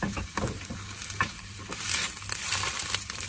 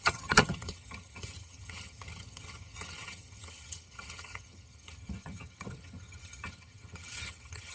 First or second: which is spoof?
second